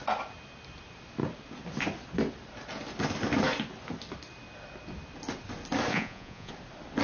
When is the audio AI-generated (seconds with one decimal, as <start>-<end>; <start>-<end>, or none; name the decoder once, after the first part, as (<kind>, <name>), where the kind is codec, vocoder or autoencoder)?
5.9-6.5 (vocoder, Vocos)